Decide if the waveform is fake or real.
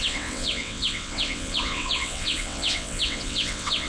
fake